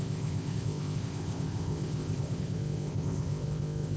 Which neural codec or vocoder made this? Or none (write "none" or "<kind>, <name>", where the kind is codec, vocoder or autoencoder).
codec, ZipCodec